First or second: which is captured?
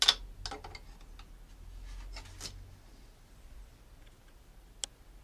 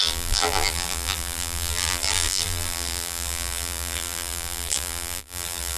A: first